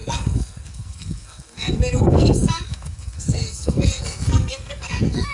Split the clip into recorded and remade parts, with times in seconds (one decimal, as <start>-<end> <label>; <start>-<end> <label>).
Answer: 0.0-5.3 remade